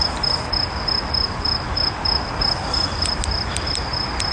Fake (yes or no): no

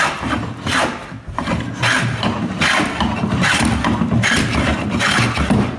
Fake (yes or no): no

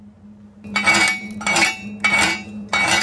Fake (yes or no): yes